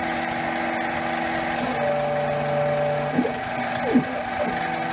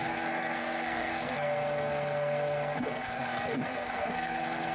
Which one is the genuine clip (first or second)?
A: first